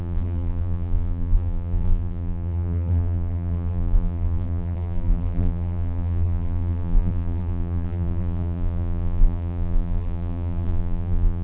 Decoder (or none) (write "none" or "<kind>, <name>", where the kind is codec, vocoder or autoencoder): vocoder, BigVGAN v2